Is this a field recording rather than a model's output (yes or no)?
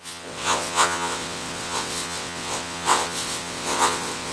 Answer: no